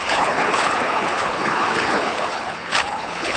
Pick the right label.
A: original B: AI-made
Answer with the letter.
B